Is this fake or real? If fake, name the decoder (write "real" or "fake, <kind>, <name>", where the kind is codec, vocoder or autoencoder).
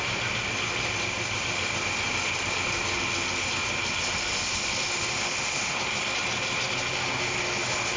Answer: real